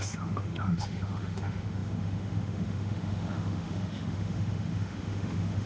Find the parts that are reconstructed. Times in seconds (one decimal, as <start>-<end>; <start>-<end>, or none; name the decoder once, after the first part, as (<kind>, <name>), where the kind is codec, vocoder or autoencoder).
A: 0.0-5.7 (autoencoder, DAC-VAE)